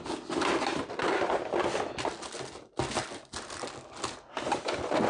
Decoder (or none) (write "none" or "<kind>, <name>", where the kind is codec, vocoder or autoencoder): none